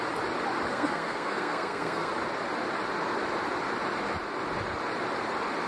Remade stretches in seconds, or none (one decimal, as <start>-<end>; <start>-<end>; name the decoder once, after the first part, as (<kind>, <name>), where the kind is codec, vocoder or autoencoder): 0.7-2.1 (codec, SNAC)